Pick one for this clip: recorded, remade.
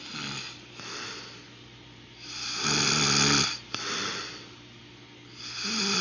recorded